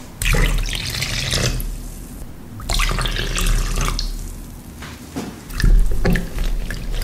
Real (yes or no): yes